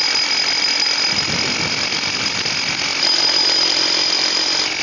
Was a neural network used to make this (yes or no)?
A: no